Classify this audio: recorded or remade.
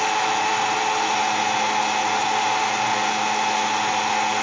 recorded